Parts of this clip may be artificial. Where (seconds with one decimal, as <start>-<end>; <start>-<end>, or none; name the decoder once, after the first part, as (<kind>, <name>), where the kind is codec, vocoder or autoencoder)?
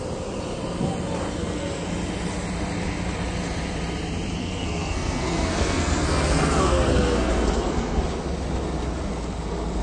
1.4-1.9 (codec, SNAC); 4.4-8.0